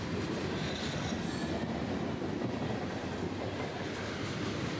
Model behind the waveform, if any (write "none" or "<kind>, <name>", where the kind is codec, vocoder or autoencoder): none